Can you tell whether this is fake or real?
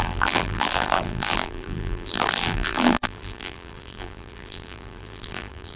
fake